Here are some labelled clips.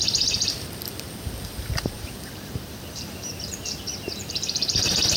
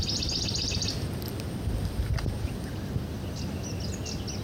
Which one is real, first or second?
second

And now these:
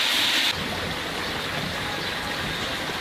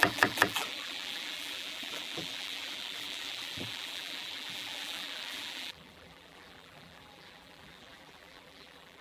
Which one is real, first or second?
first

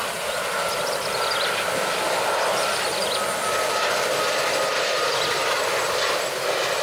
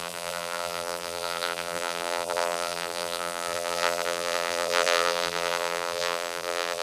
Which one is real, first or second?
first